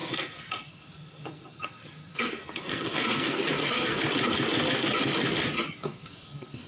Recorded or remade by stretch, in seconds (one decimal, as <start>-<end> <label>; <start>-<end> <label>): 0.0-4.0 remade; 4.0-5.9 recorded; 5.9-6.7 remade